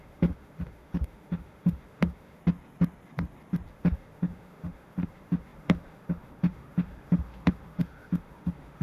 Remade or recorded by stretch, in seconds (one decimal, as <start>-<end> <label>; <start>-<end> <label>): 0.0-2.4 remade; 2.4-3.7 recorded; 3.7-8.8 remade